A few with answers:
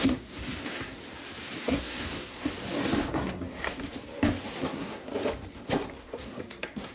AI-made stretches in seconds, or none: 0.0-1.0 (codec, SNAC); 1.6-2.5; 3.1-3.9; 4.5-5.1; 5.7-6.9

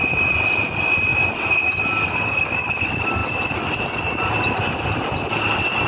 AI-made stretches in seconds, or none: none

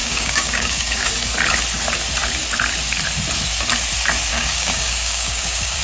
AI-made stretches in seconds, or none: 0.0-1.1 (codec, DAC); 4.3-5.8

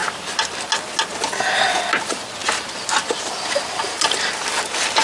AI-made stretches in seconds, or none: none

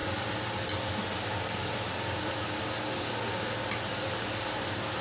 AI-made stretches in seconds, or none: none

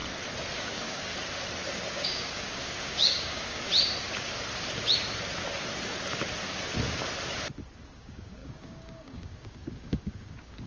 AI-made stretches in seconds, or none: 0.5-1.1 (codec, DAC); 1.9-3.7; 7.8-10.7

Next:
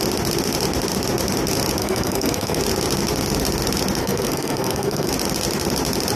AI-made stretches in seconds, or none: 1.8-2.6 (codec, SNAC); 4.0-5.1